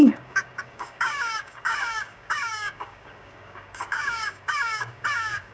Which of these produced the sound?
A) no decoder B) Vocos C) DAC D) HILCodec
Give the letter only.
C